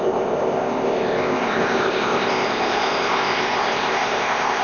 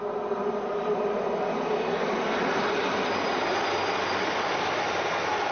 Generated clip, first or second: first